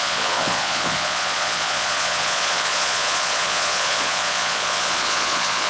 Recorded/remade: remade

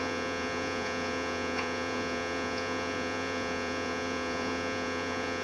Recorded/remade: remade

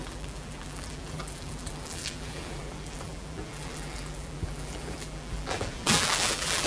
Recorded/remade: remade